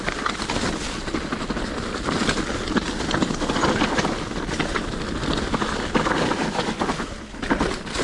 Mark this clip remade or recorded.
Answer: recorded